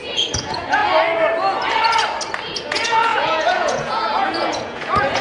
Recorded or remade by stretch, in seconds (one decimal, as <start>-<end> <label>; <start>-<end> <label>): 0.0-0.8 remade; 0.8-2.6 recorded; 2.6-5.2 remade